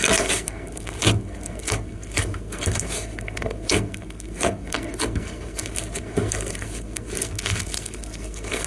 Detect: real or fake fake